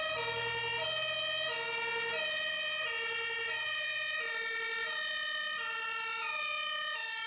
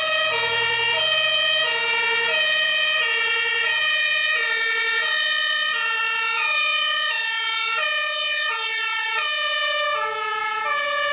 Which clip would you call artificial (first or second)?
second